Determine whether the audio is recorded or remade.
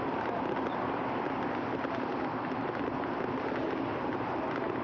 recorded